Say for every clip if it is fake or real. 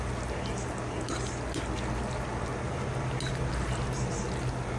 real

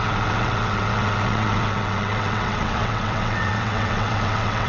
fake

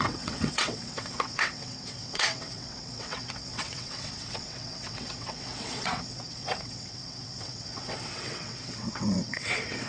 fake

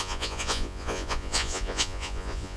fake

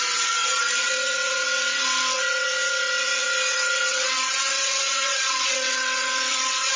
fake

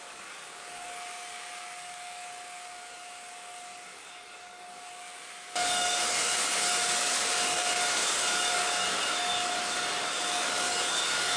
fake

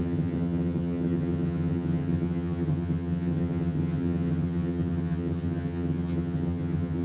fake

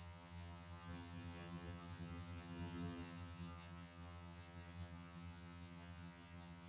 fake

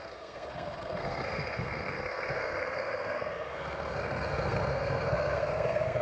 fake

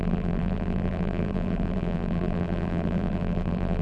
fake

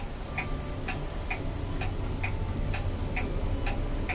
real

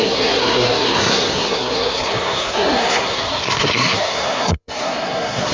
fake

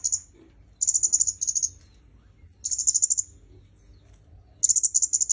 real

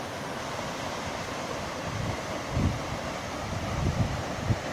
fake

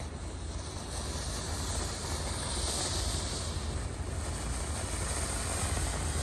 real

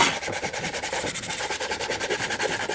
real